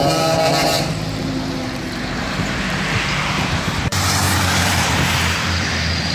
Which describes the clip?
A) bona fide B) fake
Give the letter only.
B